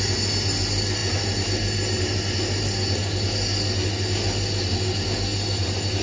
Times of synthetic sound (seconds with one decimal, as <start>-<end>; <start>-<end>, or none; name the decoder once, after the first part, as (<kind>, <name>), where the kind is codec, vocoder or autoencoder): none

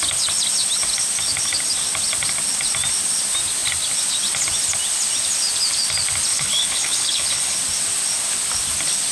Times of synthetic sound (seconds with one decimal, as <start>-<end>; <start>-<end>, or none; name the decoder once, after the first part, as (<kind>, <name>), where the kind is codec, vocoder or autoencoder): 6.3-7.6 (codec, HILCodec)

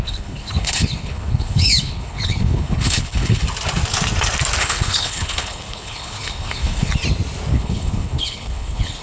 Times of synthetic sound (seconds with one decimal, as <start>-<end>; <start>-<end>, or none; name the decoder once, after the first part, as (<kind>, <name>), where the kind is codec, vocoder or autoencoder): 0.0-3.4 (codec, HILCodec); 4.6-6.9; 7.5-9.0

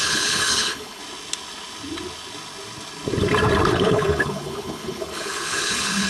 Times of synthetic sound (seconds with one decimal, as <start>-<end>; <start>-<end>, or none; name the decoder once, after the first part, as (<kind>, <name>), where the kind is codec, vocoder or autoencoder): 0.0-1.0 (codec, HILCodec); 3.7-6.1

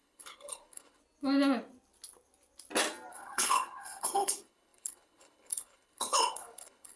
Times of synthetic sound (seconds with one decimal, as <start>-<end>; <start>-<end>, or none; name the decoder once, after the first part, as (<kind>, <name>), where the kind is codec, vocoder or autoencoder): 0.0-1.0 (codec, HILCodec); 3.1-7.0

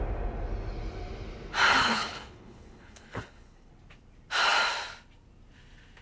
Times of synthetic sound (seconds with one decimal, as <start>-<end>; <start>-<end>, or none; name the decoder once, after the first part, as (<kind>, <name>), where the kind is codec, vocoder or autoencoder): 1.8-3.7 (codec, HILCodec)

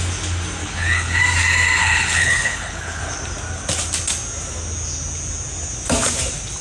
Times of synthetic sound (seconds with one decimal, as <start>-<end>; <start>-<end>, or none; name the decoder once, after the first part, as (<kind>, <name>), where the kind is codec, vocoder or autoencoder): 0.6-1.2 (codec, HILCodec); 1.8-3.0